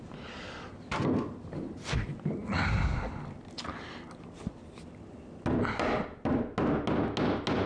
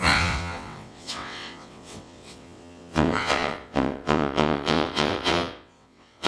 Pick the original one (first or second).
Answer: first